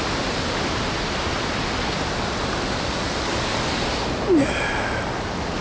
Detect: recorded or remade recorded